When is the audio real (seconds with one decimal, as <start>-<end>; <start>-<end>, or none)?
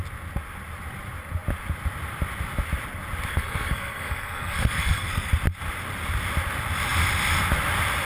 0.0-3.3; 5.3-8.1